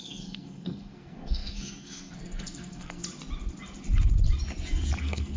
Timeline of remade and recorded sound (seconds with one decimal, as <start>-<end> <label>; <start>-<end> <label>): 0.0-3.0 remade; 3.0-5.0 recorded; 5.0-5.4 remade